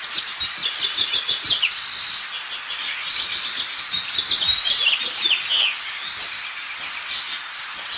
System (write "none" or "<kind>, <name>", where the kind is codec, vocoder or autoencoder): none